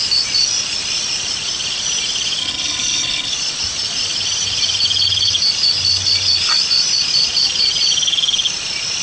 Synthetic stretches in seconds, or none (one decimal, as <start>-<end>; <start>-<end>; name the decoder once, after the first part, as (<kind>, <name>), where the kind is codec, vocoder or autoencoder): 2.4-3.3 (codec, HILCodec)